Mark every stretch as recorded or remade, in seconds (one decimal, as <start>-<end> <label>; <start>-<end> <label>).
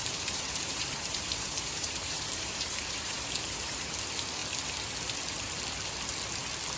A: 0.0-3.9 remade; 3.9-6.8 recorded